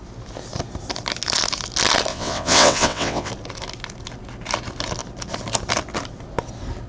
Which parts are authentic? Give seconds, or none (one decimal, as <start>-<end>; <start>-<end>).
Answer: 0.0-2.1; 3.3-6.9